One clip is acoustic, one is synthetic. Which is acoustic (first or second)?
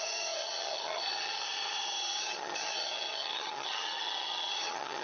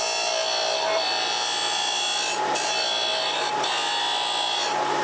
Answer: second